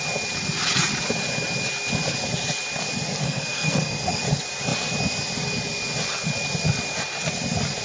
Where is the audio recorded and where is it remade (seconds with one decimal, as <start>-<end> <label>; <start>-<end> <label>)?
0.0-3.2 recorded; 3.2-4.2 remade; 4.2-7.8 recorded